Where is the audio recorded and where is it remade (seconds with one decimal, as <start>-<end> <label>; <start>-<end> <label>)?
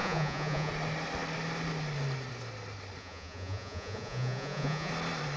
0.0-0.7 remade; 0.7-3.0 recorded; 3.0-4.9 remade; 4.9-5.4 recorded